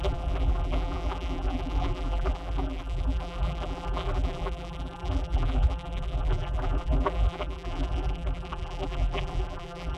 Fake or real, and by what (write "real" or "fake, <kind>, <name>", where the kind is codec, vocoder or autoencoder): fake, vocoder, BigVGAN v2